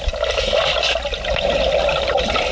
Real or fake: real